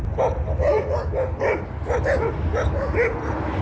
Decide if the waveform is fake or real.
real